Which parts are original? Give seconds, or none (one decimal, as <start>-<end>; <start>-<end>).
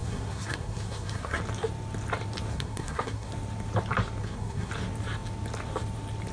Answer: 1.4-2.5; 3.3-4.2; 4.7-6.3